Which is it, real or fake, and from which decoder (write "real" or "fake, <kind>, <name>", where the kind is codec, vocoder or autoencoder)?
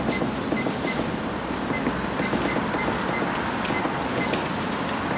fake, vocoder, BigVGAN v2